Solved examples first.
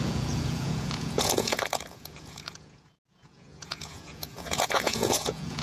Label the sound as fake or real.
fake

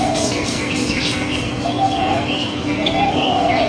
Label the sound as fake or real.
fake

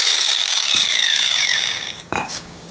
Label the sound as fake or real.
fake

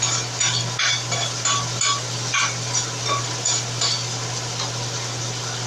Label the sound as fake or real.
real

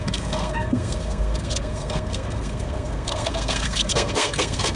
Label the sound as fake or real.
fake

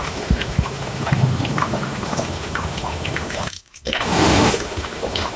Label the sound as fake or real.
fake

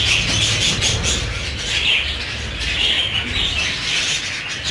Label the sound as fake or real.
real